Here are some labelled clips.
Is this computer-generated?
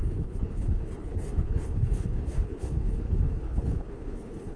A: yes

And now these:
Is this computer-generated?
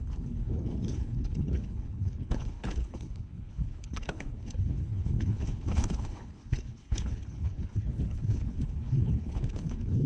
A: yes